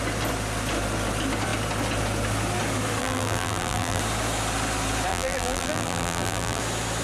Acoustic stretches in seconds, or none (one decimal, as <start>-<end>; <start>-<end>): 0.0-3.0; 4.0-5.1; 6.6-7.0